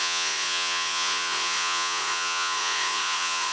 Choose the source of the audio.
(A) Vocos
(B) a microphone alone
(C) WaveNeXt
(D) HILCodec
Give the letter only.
A